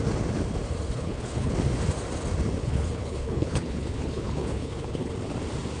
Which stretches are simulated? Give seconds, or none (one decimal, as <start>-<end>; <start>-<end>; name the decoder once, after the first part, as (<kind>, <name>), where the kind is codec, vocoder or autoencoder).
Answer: 0.9-1.5 (codec, HILCodec); 2.6-5.1